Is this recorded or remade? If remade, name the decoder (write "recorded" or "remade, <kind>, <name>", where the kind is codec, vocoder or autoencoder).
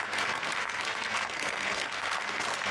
remade, codec, SNAC